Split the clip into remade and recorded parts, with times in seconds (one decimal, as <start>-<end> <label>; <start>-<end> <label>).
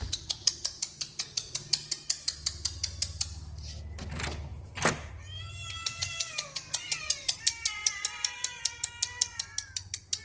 0.0-7.8 recorded; 7.8-8.6 remade; 8.6-10.2 recorded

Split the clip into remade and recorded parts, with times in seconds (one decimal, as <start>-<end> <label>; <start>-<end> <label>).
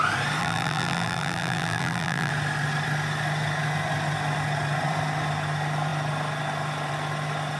0.0-0.4 recorded; 0.4-2.3 remade; 2.3-7.6 recorded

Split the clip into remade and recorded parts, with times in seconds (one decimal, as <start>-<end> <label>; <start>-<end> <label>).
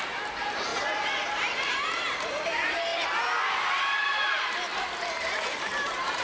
0.0-0.7 remade; 0.7-1.3 recorded; 1.3-2.9 remade; 2.9-3.8 recorded; 3.8-4.7 remade; 4.7-5.2 recorded; 5.2-6.2 remade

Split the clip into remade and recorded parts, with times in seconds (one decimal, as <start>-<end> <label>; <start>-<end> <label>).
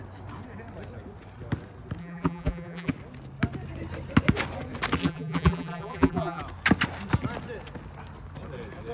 0.0-2.0 recorded; 2.0-2.9 remade; 2.9-5.0 recorded; 5.0-6.4 remade; 6.4-8.9 recorded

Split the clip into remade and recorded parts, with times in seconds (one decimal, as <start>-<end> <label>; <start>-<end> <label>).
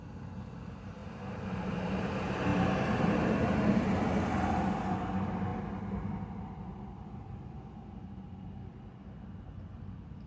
0.0-1.0 recorded; 1.0-2.0 remade; 2.0-2.5 recorded; 2.5-3.1 remade; 3.1-10.3 recorded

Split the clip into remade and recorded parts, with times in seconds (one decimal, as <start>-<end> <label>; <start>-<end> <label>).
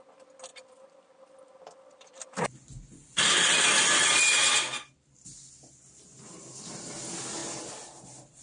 0.0-0.5 recorded; 0.5-5.5 remade; 5.5-7.4 recorded; 7.4-8.4 remade